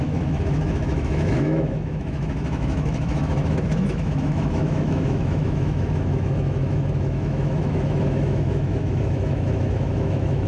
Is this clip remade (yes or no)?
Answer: yes